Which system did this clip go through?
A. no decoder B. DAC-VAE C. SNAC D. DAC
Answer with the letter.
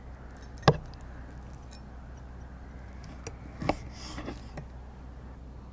A